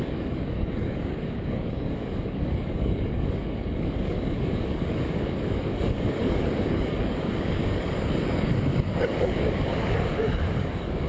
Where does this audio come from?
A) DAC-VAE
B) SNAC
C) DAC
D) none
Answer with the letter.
C